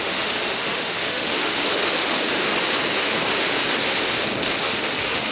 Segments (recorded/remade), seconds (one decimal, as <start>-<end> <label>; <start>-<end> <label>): 0.0-2.3 remade; 2.3-4.6 recorded; 4.6-5.3 remade